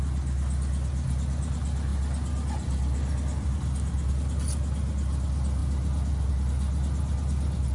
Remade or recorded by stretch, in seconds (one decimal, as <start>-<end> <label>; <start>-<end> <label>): 0.0-7.7 recorded